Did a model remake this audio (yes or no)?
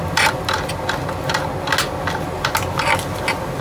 no